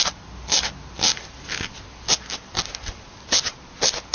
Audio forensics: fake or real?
real